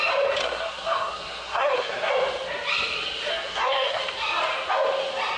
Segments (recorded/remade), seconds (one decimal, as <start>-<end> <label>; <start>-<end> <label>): 0.0-0.4 recorded; 0.4-2.1 remade; 2.1-3.3 recorded; 3.3-4.0 remade; 4.0-5.4 recorded